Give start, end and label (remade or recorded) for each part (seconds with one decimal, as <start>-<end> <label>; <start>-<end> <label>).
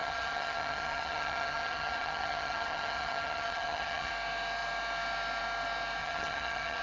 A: 0.0-4.1 remade; 4.1-6.0 recorded; 6.0-6.8 remade